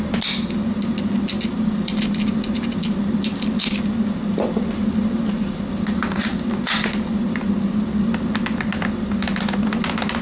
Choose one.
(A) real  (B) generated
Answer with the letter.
A